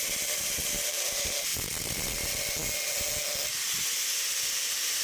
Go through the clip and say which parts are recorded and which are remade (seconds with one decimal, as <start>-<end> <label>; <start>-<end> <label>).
0.0-1.5 remade; 1.5-4.5 recorded; 4.5-5.0 remade